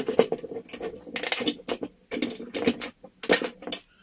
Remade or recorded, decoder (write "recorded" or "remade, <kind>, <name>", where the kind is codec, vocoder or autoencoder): recorded